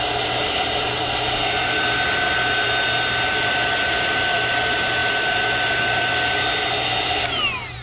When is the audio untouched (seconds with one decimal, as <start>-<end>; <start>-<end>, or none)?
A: 0.0-7.8